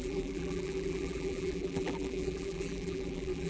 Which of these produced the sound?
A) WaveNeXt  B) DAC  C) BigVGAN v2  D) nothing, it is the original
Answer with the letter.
C